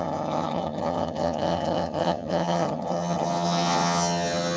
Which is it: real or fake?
fake